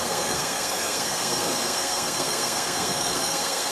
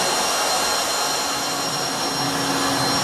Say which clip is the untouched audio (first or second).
second